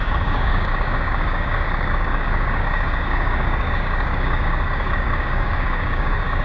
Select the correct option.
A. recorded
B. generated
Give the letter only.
B